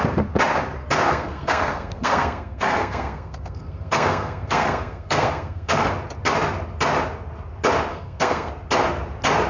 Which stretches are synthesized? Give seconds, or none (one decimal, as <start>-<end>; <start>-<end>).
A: 1.0-5.9; 7.9-8.5